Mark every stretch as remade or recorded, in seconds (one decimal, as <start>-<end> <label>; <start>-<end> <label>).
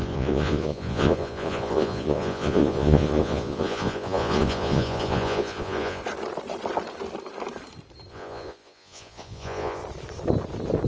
0.0-6.0 remade; 6.0-8.1 recorded; 8.1-9.8 remade; 9.8-10.9 recorded